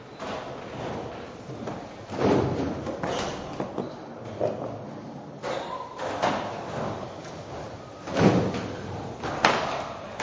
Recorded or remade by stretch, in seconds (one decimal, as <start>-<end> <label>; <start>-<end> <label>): 0.0-10.2 recorded